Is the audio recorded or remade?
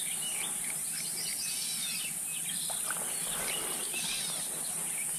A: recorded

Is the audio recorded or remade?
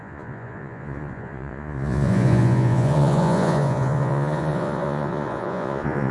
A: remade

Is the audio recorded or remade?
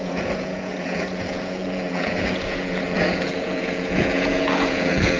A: remade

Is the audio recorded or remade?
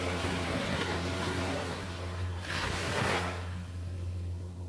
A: remade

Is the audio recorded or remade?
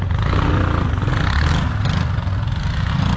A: recorded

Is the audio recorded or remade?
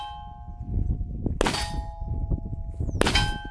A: recorded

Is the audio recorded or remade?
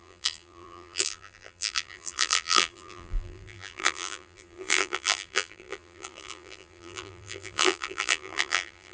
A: remade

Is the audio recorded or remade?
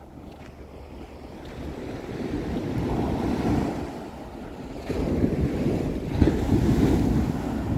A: recorded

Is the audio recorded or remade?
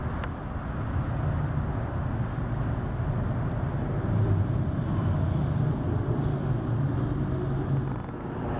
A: recorded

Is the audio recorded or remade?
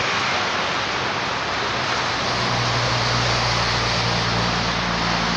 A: recorded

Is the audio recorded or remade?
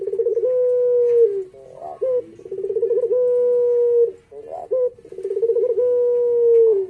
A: recorded